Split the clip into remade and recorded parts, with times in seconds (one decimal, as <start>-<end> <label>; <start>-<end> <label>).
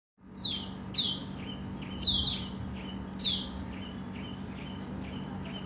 0.0-5.7 recorded